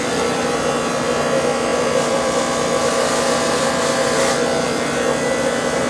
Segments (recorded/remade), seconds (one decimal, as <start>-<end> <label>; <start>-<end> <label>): 0.0-1.7 recorded; 1.7-2.4 remade; 2.4-2.8 recorded; 2.8-4.2 remade; 4.2-5.9 recorded